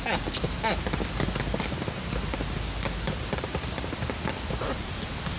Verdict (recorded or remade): recorded